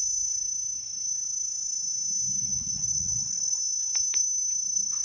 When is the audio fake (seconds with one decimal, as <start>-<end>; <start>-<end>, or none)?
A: 2.4-3.6